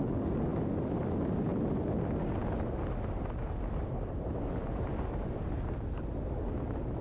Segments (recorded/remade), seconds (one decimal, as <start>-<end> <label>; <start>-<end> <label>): 0.0-0.5 recorded; 0.5-1.7 remade; 1.7-7.0 recorded

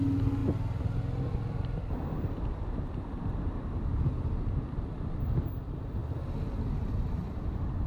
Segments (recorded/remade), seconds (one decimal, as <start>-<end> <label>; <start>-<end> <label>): 0.0-6.0 remade; 6.0-7.5 recorded; 7.5-7.9 remade

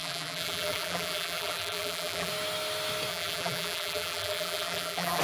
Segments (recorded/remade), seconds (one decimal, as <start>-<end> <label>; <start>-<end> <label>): 0.0-2.3 remade; 2.3-3.1 recorded; 3.1-5.2 remade